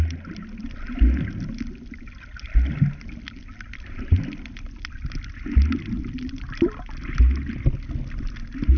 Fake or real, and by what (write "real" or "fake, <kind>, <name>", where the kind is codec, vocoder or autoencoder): real